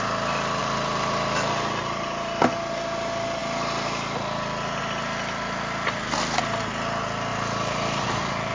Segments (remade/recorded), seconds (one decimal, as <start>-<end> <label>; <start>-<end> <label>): 0.0-0.6 recorded; 0.6-2.4 remade; 2.4-7.3 recorded; 7.3-8.5 remade